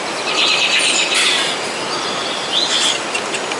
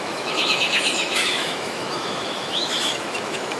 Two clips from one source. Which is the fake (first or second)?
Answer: second